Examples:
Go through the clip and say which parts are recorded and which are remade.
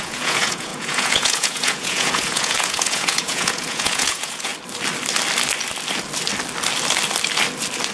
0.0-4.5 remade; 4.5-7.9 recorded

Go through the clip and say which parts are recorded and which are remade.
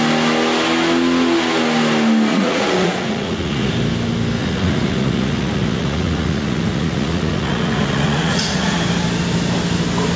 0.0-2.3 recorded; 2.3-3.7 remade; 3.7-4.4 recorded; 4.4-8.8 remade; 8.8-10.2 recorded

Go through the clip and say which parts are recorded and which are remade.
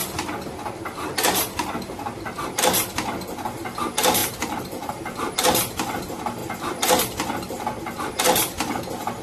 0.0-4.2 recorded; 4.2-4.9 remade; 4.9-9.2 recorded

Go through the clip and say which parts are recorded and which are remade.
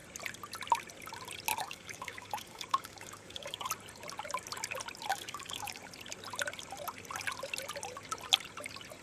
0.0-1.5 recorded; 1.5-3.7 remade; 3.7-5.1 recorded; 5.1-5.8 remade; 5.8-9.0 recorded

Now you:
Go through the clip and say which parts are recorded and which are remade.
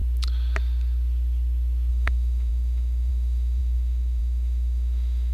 0.0-1.9 recorded; 1.9-5.3 remade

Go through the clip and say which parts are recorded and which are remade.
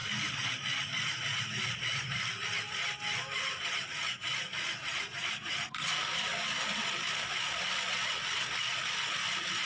0.0-9.7 recorded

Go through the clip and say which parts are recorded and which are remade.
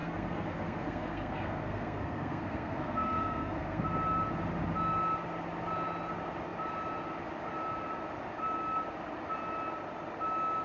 0.0-3.8 remade; 3.8-10.6 recorded